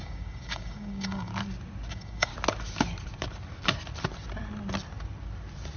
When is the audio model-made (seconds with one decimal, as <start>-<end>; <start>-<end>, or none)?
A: 0.0-1.3; 1.9-2.3